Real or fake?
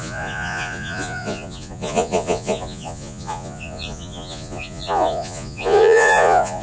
fake